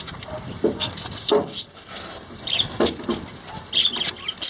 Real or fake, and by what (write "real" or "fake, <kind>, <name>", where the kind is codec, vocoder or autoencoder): real